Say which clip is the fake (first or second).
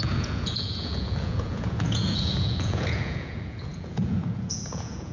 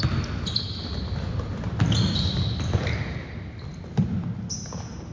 first